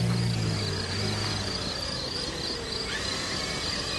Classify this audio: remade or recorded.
recorded